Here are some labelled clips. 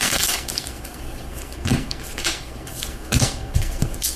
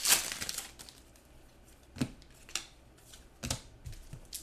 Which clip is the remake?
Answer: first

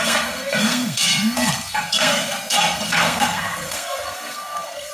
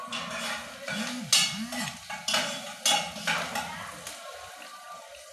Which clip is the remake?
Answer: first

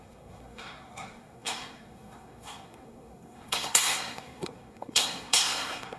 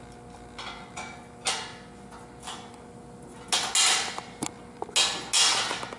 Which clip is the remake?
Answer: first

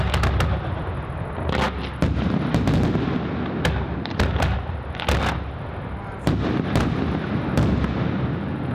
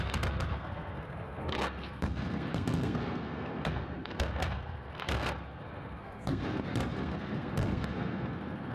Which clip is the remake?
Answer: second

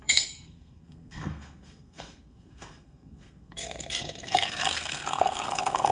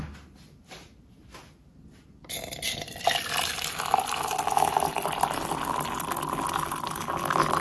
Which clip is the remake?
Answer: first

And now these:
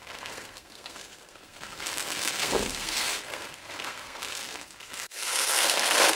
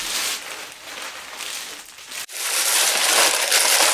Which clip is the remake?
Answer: first